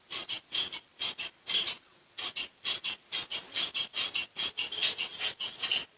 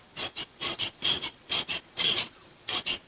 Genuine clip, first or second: first